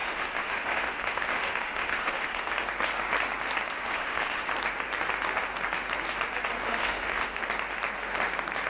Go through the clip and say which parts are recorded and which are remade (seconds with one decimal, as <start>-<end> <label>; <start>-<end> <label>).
0.0-2.5 remade; 2.5-3.7 recorded; 3.7-4.5 remade; 4.5-6.8 recorded; 6.8-7.4 remade; 7.4-8.7 recorded